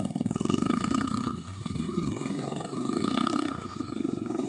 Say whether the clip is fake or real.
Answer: fake